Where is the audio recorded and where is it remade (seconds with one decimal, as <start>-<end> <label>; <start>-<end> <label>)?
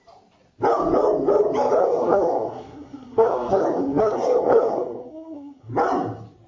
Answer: 0.0-1.8 recorded; 1.8-5.7 remade; 5.7-6.5 recorded